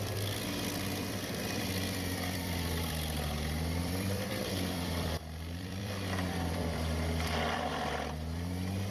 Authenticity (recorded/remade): remade